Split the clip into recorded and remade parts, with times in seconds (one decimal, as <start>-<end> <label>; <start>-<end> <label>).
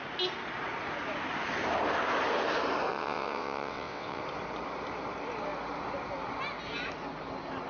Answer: 0.0-2.9 recorded; 2.9-4.2 remade; 4.2-7.7 recorded